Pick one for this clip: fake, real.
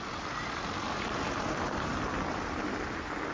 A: real